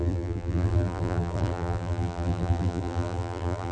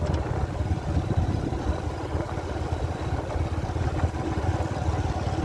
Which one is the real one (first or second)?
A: second